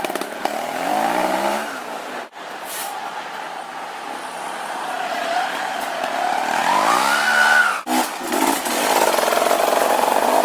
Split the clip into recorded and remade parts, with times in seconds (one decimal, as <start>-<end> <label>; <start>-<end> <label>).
0.0-2.8 remade; 2.8-5.1 recorded; 5.1-6.6 remade; 6.6-9.6 recorded; 9.6-10.4 remade